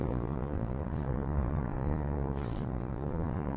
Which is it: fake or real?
fake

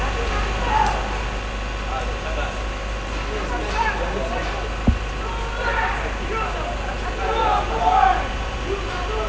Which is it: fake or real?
real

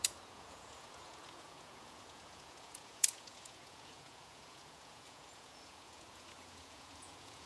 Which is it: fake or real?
fake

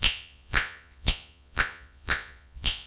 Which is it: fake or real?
fake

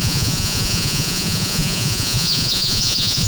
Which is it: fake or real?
fake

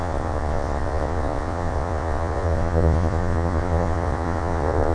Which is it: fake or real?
fake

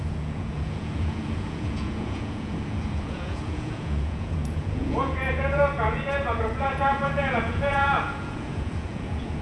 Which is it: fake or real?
fake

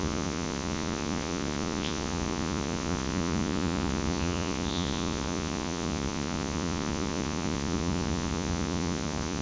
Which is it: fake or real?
fake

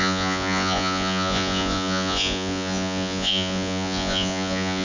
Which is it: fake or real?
fake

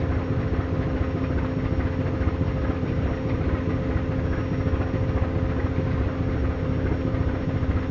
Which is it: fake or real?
real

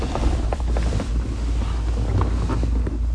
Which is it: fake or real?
real